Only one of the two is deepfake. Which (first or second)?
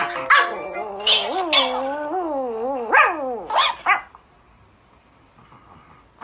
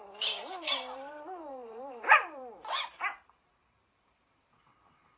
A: second